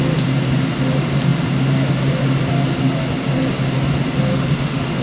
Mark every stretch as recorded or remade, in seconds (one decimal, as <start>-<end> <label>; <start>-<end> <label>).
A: 0.0-4.3 recorded; 4.3-5.0 remade